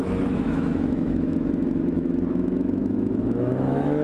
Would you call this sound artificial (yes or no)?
yes